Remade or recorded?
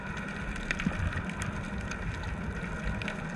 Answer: recorded